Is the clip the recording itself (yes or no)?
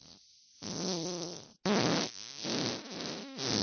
yes